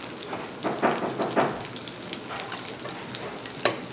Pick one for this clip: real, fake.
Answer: real